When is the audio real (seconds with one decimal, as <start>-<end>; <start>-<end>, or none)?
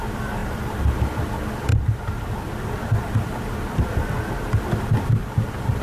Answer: 0.0-0.4; 1.2-1.7; 4.3-5.2